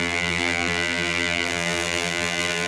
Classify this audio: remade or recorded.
remade